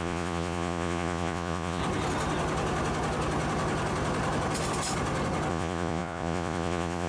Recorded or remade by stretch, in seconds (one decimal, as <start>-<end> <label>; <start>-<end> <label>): 0.0-1.8 remade; 1.8-5.5 recorded; 5.5-7.1 remade